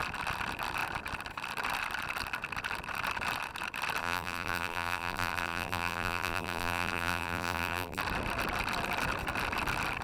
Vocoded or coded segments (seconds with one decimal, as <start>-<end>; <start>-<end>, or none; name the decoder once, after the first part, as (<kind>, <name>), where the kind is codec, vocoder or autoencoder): 4.0-8.0 (vocoder, BigVGAN v2)